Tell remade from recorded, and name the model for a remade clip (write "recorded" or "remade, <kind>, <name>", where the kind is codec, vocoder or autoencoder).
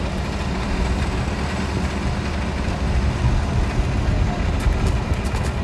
recorded